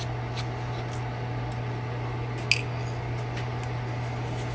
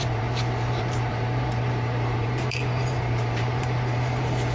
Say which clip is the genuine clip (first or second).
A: first